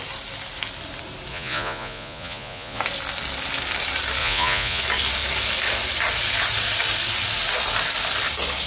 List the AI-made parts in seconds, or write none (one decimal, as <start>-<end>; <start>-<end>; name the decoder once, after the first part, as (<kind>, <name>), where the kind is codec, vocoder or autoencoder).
1.3-2.8 (vocoder, Vocos); 4.2-4.8

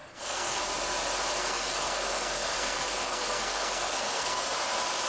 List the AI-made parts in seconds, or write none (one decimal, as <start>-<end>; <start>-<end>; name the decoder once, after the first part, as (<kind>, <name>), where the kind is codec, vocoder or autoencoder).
0.0-0.6 (codec, SNAC); 1.4-4.4